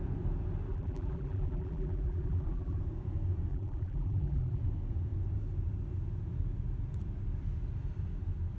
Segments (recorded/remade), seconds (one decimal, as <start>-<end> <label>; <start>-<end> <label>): 0.0-0.7 recorded; 0.7-2.8 remade; 2.8-3.5 recorded; 3.5-4.6 remade; 4.6-8.6 recorded